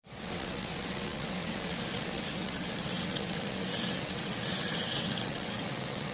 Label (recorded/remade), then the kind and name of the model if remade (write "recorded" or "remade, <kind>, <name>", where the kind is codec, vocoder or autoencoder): remade, vocoder, WaveNeXt